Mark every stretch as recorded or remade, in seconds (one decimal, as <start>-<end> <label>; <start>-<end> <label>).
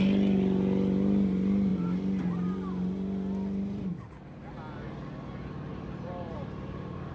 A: 0.0-5.7 recorded; 5.7-7.1 remade